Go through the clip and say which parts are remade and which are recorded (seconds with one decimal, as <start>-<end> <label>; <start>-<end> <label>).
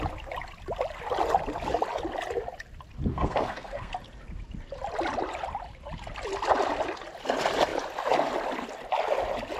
0.0-3.1 recorded; 3.1-3.9 remade; 3.9-9.6 recorded